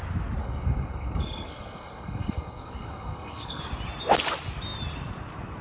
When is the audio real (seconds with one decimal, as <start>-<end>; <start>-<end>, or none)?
0.0-0.4; 3.6-5.6